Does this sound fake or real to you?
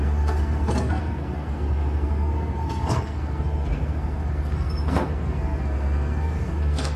fake